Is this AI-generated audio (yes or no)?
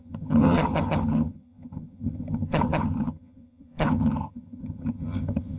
yes